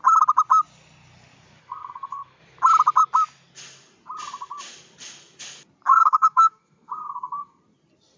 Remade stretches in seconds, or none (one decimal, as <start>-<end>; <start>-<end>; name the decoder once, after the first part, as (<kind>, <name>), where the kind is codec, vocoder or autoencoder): 1.6-2.4 (codec, SNAC); 5.9-7.6